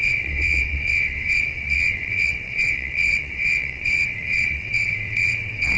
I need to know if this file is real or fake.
fake